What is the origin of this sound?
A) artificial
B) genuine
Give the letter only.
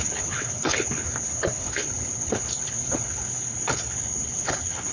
A